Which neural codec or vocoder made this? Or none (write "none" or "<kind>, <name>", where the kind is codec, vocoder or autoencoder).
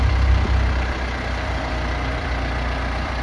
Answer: vocoder, BigVGAN v2